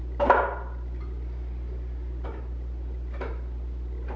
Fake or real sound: real